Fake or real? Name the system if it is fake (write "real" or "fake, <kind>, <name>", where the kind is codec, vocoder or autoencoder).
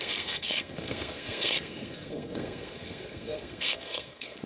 fake, codec, SNAC